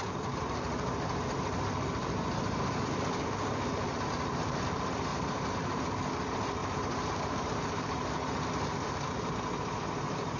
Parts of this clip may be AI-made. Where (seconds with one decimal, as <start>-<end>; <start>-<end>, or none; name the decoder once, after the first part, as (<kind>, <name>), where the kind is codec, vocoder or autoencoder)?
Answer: 2.0-2.7 (vocoder, BigVGAN v2); 5.1-6.1; 6.6-8.1